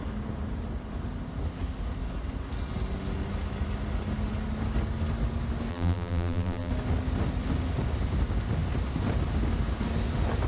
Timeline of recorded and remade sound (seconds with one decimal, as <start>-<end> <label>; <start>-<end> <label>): 0.0-5.7 recorded; 5.7-6.7 remade; 6.7-10.5 recorded